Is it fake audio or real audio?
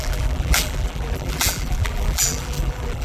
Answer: fake